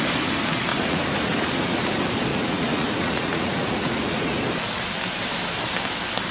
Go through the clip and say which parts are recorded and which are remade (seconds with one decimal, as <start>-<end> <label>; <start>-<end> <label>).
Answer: 0.0-0.7 recorded; 0.7-1.9 remade; 1.9-2.3 recorded; 2.3-4.4 remade; 4.4-6.3 recorded

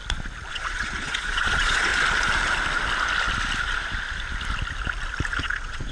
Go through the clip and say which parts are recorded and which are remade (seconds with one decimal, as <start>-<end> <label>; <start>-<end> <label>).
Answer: 0.0-0.5 recorded; 0.5-1.9 remade; 1.9-5.4 recorded; 5.4-5.9 remade